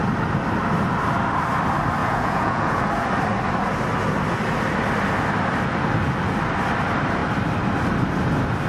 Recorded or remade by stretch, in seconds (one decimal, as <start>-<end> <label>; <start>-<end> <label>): 0.0-2.0 recorded; 2.0-2.9 remade; 2.9-8.7 recorded